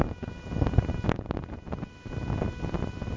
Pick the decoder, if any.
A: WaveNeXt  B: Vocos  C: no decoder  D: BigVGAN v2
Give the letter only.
C